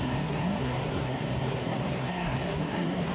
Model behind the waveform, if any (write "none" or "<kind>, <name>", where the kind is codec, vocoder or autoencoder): codec, SNAC